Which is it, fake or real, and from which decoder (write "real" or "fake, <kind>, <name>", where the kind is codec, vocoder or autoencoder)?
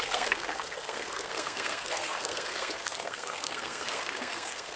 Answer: fake, codec, SNAC